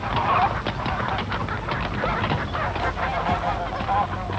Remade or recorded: recorded